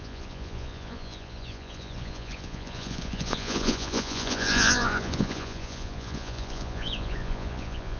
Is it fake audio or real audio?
fake